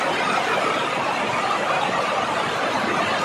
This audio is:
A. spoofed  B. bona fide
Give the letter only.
B